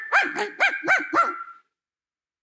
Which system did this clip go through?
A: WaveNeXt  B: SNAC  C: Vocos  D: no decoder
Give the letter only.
D